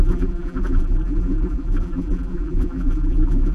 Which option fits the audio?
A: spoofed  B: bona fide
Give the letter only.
A